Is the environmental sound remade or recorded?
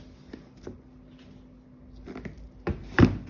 recorded